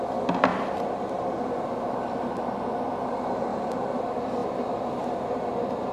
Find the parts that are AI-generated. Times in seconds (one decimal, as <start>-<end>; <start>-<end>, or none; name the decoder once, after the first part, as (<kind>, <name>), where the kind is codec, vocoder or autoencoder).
0.5-1.2 (vocoder, BigVGAN v2); 3.5-4.0; 4.4-5.5